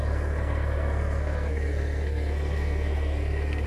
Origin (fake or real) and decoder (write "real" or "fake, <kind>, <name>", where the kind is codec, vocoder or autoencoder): fake, codec, SNAC